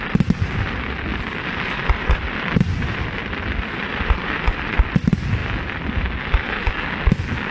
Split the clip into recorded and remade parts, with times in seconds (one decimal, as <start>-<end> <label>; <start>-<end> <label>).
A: 0.0-1.1 recorded; 1.1-2.5 remade; 2.5-3.2 recorded; 3.2-3.9 remade; 3.9-5.4 recorded; 5.4-6.2 remade; 6.2-7.5 recorded